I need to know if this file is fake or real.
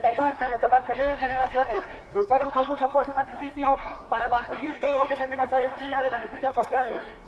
fake